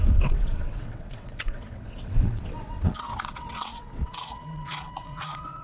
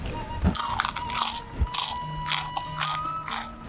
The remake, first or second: first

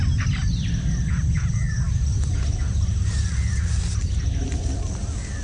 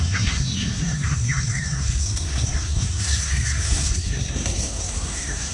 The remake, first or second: second